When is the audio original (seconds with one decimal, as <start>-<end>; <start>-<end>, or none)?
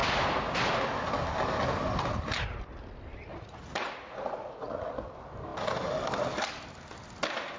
0.0-3.3; 4.9-7.6